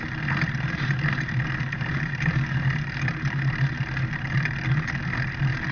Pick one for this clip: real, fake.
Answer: real